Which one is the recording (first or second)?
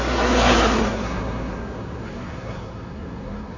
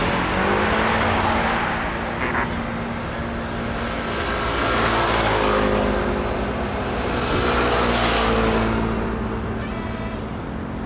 second